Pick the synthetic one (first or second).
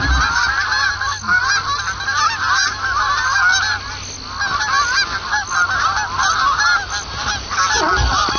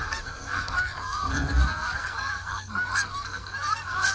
second